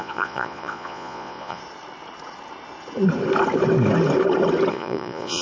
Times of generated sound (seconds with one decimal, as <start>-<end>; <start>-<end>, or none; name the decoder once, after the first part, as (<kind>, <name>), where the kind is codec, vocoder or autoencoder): 0.0-1.6 (vocoder, Vocos); 4.7-5.4